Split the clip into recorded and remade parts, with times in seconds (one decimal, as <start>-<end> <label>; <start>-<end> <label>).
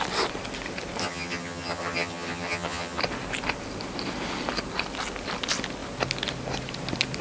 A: 0.0-1.0 recorded; 1.0-3.0 remade; 3.0-7.2 recorded